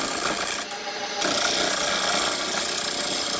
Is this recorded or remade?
recorded